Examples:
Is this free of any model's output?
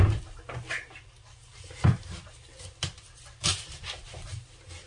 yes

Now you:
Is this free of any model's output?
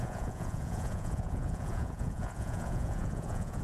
no